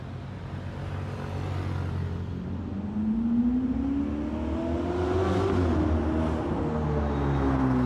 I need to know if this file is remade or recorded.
recorded